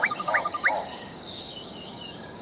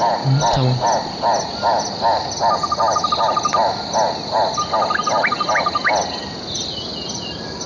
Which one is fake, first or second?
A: first